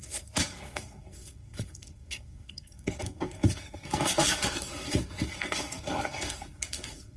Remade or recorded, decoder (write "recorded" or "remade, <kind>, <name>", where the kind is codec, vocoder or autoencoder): remade, codec, SNAC